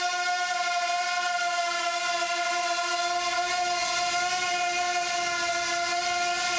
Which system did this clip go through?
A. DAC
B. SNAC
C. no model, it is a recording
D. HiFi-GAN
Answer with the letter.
C